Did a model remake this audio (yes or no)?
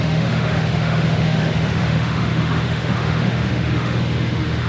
yes